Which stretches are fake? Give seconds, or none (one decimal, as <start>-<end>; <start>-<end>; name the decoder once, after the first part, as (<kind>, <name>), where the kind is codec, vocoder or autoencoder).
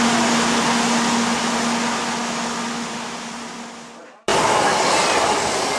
none